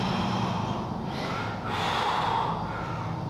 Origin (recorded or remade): recorded